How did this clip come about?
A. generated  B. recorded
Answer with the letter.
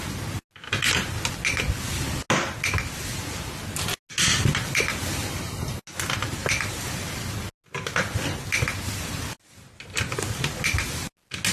B